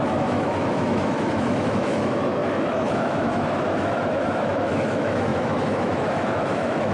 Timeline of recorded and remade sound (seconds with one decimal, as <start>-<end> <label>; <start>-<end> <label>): 0.0-6.9 remade